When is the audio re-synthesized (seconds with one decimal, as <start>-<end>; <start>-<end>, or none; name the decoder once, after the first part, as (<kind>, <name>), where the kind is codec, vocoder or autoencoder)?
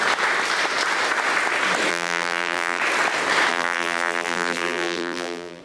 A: 1.9-2.8 (vocoder, BigVGAN v2); 3.5-5.6